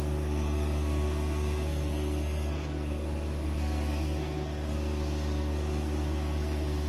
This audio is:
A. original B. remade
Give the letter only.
B